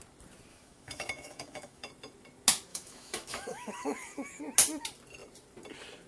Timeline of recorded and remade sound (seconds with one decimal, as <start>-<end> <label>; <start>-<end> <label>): 0.0-0.5 recorded; 0.5-1.9 remade; 1.9-2.7 recorded; 2.7-4.4 remade; 4.4-6.1 recorded